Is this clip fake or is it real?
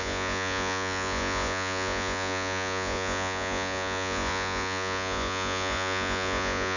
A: fake